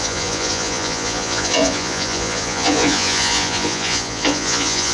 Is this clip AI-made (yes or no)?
yes